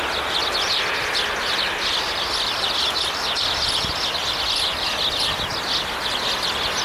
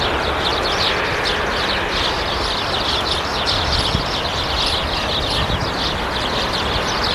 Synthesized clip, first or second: second